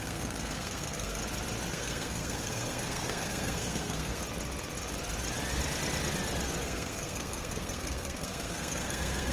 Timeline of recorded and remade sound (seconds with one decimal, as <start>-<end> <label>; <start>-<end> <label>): 0.0-1.2 remade; 1.2-1.7 recorded; 1.7-4.2 remade; 4.2-6.6 recorded; 6.6-9.3 remade